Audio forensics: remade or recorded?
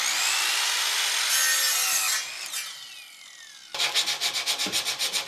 recorded